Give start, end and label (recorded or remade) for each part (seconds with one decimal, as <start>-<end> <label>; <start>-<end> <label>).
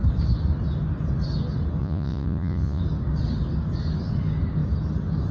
0.0-1.8 recorded; 1.8-2.8 remade; 2.8-5.3 recorded